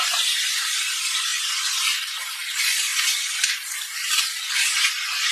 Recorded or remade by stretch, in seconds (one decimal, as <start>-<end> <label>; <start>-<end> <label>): 0.0-2.9 recorded; 2.9-4.4 remade; 4.4-5.3 recorded